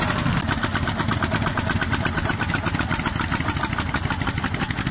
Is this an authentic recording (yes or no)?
yes